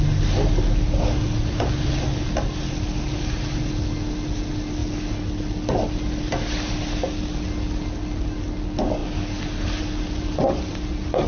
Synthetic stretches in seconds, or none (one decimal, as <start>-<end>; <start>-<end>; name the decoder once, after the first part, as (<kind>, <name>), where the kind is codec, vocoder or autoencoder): none